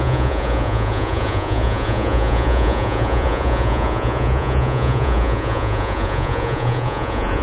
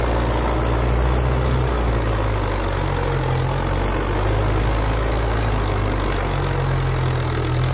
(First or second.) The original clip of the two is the second